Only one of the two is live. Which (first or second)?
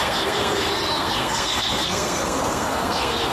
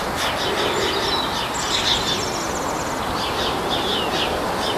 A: second